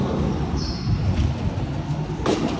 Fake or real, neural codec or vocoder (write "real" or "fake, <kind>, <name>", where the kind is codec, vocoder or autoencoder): real